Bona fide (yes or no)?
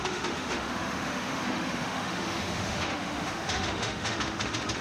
no